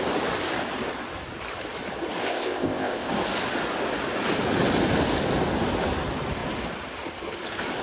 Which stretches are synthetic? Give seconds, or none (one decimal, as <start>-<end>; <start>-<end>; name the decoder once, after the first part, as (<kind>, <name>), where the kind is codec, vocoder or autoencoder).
2.2-3.1 (codec, ZipCodec)